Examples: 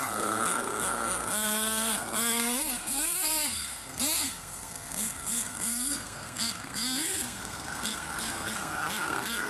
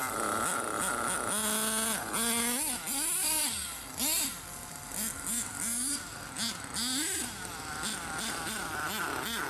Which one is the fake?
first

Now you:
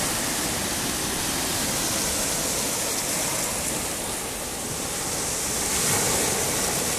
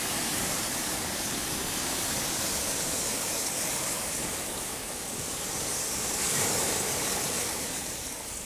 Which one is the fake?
second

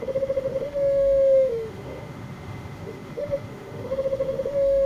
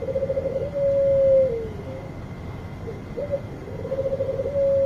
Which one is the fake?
first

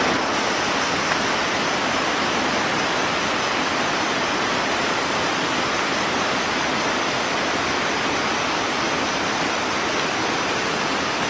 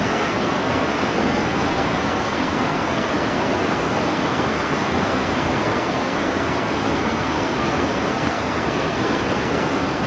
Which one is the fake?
second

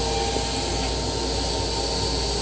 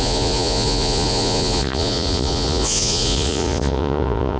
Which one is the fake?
second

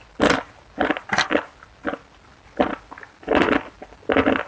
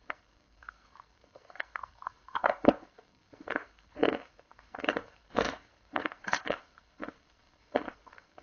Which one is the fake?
second